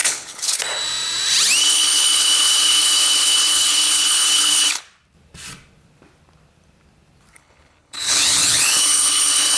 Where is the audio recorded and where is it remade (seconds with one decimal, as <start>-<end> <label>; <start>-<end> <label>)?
0.0-0.6 remade; 0.6-1.6 recorded; 1.6-4.8 remade; 4.8-7.3 recorded; 7.3-9.6 remade